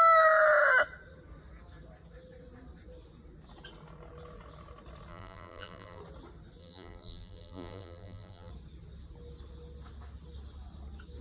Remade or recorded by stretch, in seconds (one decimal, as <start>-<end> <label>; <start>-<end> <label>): 0.0-5.1 recorded; 5.1-6.0 remade; 6.0-6.6 recorded; 6.6-8.5 remade; 8.5-11.2 recorded